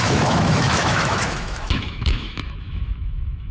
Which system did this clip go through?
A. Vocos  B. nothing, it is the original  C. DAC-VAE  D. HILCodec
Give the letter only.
C